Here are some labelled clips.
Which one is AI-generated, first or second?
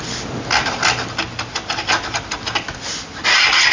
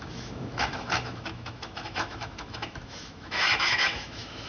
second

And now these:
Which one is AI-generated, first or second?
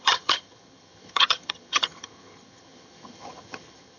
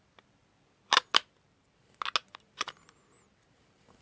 first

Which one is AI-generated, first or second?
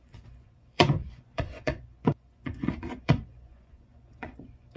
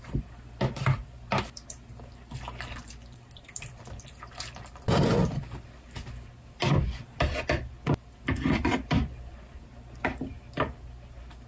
first